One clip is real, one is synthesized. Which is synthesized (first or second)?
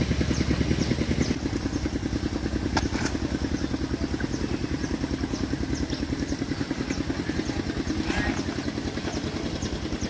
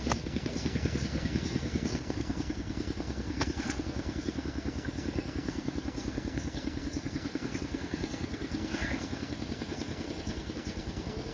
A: second